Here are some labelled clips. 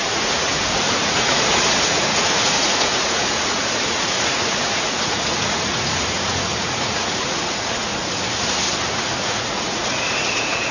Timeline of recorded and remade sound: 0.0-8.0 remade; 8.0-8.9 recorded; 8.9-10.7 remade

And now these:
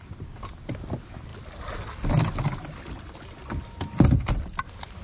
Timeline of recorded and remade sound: 0.0-5.0 recorded

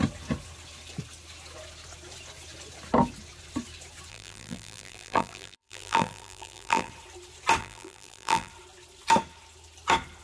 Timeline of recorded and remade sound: 0.0-4.1 recorded; 4.1-6.9 remade; 6.9-7.6 recorded; 7.6-8.5 remade; 8.5-10.2 recorded

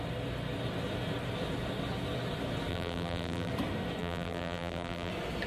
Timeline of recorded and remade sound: 0.0-2.7 recorded; 2.7-3.5 remade; 3.5-4.0 recorded; 4.0-5.1 remade; 5.1-5.5 recorded